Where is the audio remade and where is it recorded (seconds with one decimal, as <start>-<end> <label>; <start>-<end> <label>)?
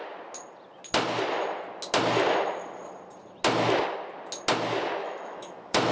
0.0-5.0 recorded; 5.0-5.9 remade